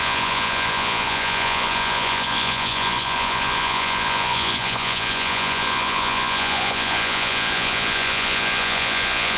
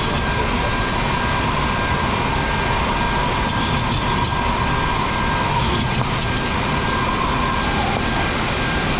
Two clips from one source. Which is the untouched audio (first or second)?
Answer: second